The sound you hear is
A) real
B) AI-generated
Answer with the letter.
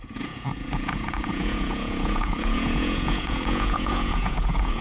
B